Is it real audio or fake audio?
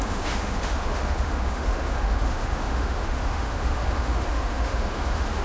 fake